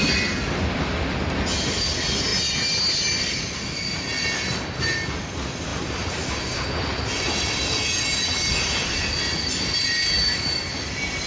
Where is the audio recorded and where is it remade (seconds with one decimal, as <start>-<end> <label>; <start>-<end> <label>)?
0.0-11.3 recorded

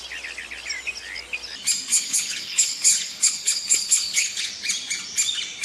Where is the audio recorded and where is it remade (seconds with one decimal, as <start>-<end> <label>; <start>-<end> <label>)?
0.0-1.9 recorded; 1.9-4.5 remade; 4.5-5.6 recorded

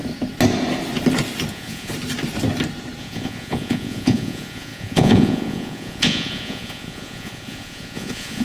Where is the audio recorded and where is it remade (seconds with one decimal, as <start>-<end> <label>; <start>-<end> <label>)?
0.0-1.5 recorded; 1.5-1.9 remade; 1.9-3.0 recorded; 3.0-8.4 remade

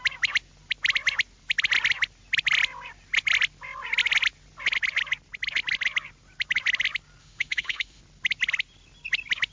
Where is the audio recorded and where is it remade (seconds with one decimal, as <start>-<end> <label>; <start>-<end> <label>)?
0.0-7.2 recorded; 7.2-8.0 remade; 8.0-9.5 recorded